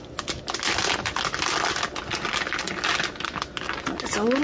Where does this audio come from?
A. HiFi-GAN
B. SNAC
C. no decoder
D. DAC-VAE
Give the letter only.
C